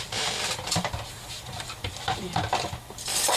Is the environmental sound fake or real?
fake